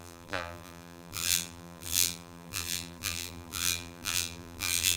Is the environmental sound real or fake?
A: fake